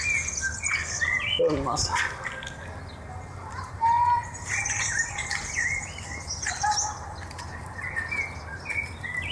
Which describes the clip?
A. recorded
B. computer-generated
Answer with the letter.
A